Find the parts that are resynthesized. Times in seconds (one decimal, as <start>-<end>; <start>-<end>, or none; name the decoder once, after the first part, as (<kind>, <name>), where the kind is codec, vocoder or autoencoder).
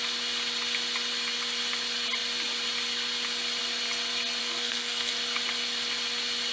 4.4-5.1 (codec, SNAC)